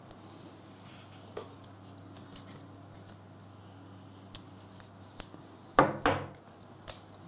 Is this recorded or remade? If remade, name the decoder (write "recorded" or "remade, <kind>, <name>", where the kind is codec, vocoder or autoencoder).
recorded